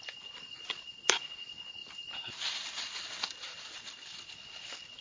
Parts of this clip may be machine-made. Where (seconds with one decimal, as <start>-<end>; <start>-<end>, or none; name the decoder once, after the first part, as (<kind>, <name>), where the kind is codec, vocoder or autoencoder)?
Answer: none